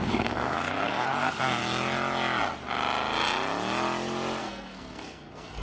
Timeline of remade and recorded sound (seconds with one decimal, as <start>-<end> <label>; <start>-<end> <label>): 0.0-1.6 remade; 1.6-4.4 recorded; 4.4-5.6 remade